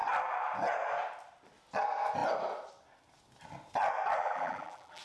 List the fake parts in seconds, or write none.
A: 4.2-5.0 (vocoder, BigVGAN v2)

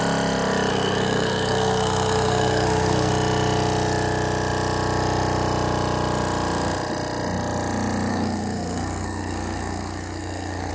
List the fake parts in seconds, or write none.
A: 0.7-3.1 (codec, SNAC); 8.1-10.7

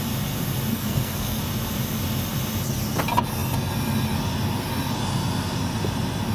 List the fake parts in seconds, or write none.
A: 0.7-1.4 (codec, SNAC)

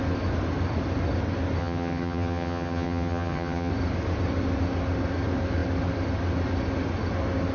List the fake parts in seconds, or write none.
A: 1.6-3.7 (vocoder, HiFi-GAN)

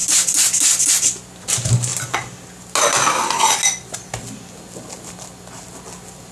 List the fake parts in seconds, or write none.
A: none

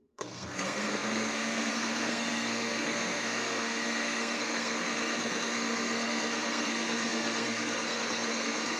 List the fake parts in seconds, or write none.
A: 0.0-8.8 (codec, SNAC)